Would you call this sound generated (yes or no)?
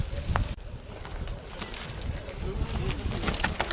no